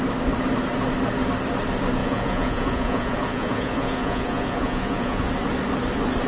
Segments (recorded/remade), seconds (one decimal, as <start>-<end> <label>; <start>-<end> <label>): 0.0-2.0 recorded; 2.0-5.3 remade; 5.3-6.3 recorded